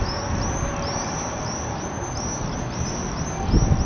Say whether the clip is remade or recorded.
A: recorded